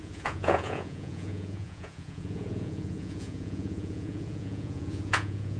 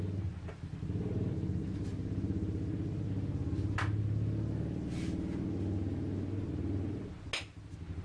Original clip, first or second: second